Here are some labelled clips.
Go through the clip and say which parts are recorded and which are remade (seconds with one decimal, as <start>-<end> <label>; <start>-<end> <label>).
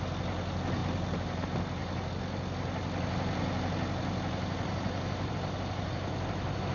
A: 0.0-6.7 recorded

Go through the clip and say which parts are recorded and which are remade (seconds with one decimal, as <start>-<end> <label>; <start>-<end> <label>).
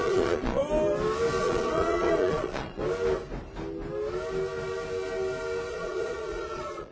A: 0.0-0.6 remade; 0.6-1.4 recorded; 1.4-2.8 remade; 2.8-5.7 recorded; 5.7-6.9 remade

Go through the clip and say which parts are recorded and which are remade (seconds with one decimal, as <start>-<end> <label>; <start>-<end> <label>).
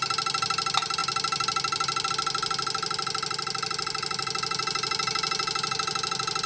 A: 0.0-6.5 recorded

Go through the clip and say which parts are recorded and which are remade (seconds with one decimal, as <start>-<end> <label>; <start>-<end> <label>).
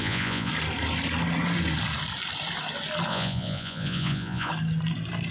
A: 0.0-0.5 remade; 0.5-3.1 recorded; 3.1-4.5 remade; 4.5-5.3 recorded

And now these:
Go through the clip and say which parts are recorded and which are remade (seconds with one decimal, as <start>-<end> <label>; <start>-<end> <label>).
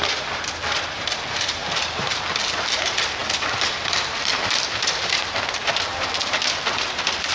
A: 0.0-1.6 recorded; 1.6-2.2 remade; 2.2-7.3 recorded